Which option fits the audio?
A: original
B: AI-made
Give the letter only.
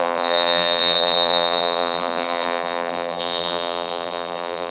B